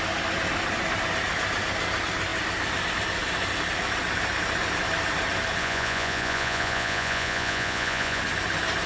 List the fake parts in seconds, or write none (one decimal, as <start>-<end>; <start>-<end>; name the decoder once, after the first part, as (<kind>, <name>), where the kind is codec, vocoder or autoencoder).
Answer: 5.6-8.2 (vocoder, Vocos)